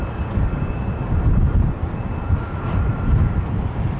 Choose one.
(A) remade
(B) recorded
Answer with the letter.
B